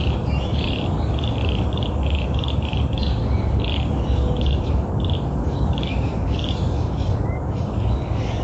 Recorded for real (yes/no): no